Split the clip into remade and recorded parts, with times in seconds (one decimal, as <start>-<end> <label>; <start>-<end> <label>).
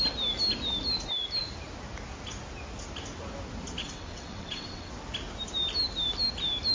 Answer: 0.0-3.8 recorded; 3.8-4.9 remade; 4.9-6.7 recorded